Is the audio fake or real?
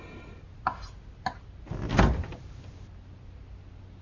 real